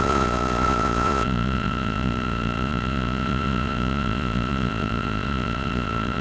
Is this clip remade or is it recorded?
remade